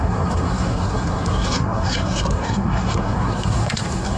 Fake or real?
fake